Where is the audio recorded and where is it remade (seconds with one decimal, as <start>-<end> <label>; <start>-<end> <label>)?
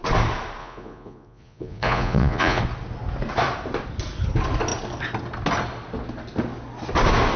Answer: 0.0-0.6 recorded; 0.6-2.6 remade; 2.6-7.4 recorded